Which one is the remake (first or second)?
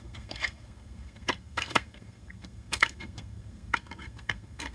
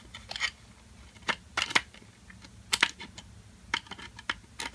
first